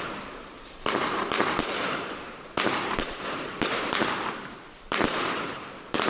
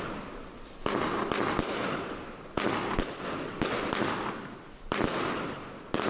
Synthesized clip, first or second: first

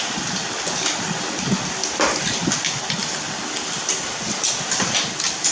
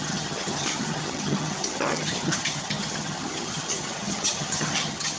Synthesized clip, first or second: second